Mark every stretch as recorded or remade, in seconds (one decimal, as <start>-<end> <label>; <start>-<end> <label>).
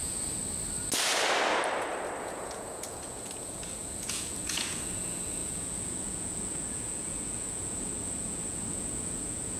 0.0-0.4 remade; 0.4-2.2 recorded; 2.2-9.6 remade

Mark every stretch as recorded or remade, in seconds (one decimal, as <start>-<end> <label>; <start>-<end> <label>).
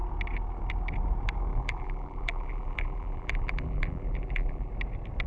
0.0-1.5 recorded; 1.5-4.7 remade; 4.7-5.3 recorded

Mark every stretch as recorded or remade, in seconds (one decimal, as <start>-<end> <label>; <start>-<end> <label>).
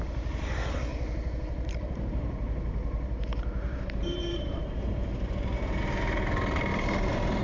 0.0-0.9 recorded; 0.9-5.3 remade; 5.3-6.7 recorded; 6.7-7.4 remade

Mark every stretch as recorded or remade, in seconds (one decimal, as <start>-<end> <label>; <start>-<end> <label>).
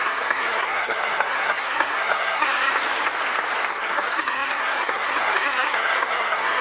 0.0-2.7 remade; 2.7-3.7 recorded; 3.7-6.6 remade